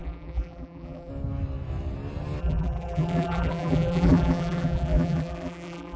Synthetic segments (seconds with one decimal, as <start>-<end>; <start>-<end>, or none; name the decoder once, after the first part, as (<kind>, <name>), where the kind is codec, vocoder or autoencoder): 0.0-1.1 (vocoder, BigVGAN v2); 2.4-6.0